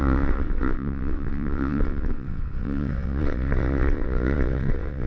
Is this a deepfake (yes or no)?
yes